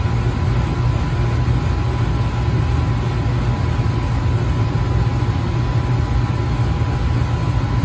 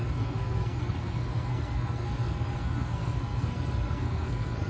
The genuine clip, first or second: first